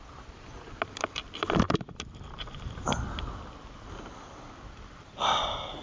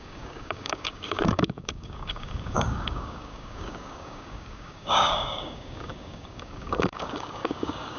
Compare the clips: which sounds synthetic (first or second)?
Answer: second